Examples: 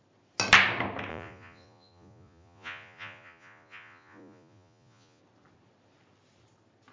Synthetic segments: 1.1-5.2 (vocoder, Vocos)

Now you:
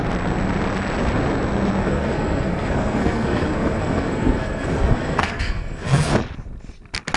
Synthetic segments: 1.8-6.1 (codec, SNAC)

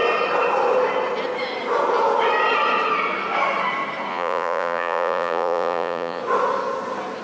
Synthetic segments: 4.1-6.2 (vocoder, Vocos)

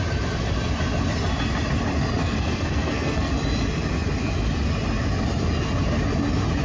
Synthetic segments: 2.2-3.3 (codec, SNAC)